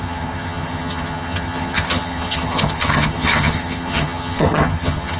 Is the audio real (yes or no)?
no